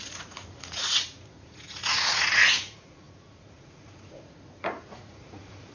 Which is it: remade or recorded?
remade